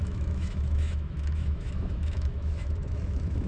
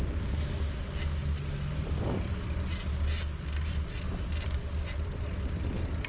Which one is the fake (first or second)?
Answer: first